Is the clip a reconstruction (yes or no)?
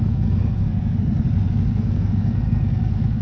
yes